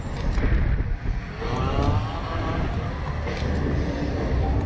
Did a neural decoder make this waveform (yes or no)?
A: no